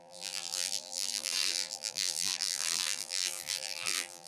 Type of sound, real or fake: fake